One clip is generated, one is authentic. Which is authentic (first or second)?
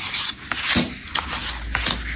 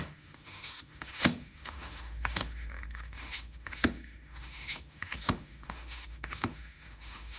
first